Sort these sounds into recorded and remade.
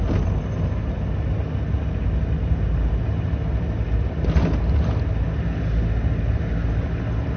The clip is recorded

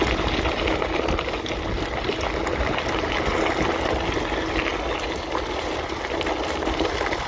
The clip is recorded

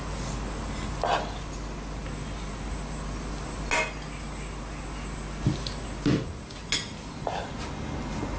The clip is recorded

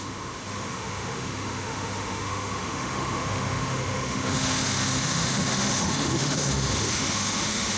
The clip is remade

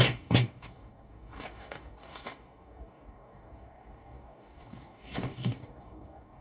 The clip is remade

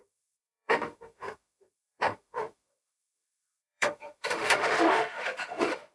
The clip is remade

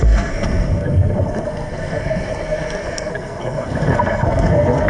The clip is remade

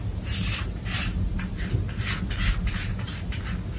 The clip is remade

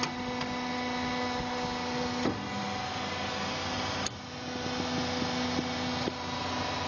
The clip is recorded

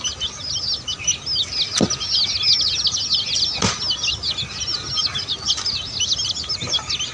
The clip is recorded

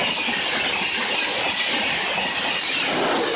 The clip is recorded